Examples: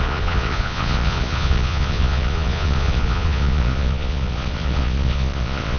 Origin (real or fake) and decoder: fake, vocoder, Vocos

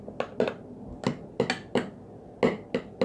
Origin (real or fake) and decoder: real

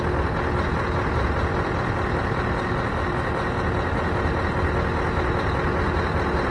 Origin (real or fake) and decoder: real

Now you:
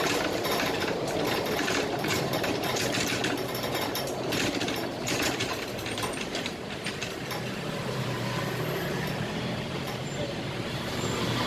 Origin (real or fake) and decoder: fake, vocoder, BigVGAN v2